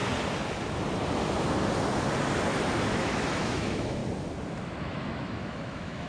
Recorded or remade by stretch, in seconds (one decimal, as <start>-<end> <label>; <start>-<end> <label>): 0.0-2.9 recorded; 2.9-4.0 remade; 4.0-4.8 recorded; 4.8-6.1 remade